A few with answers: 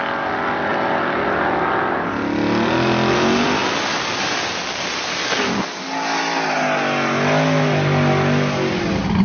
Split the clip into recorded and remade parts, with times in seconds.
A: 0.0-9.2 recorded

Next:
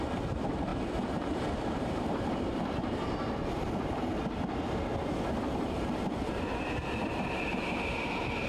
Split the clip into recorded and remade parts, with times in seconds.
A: 0.0-3.4 remade; 3.4-5.3 recorded; 5.3-8.5 remade

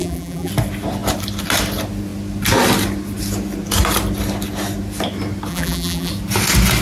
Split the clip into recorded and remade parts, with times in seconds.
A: 0.0-0.5 remade; 0.5-5.5 recorded; 5.5-6.1 remade; 6.1-6.8 recorded

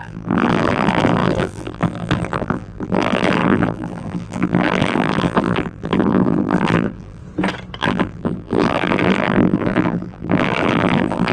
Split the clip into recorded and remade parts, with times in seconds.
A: 0.0-7.2 remade; 7.2-7.8 recorded; 7.8-11.3 remade

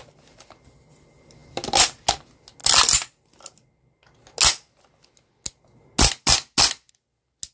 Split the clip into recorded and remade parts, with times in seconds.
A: 0.0-7.5 recorded